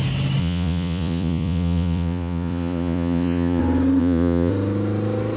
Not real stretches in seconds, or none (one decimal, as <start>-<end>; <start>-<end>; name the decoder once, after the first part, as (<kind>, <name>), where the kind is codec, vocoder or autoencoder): 0.4-3.6 (vocoder, Vocos); 4.0-4.5